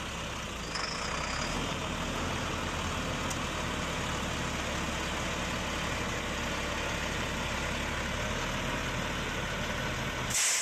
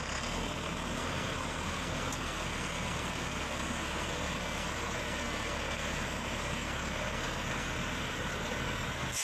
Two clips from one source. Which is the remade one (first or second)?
second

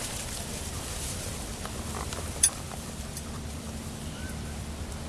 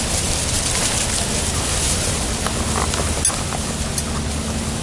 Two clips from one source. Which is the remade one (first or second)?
first